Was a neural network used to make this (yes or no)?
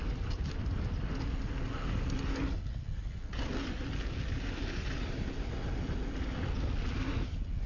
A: no